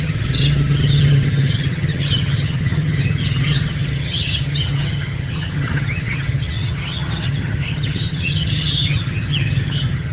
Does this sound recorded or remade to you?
remade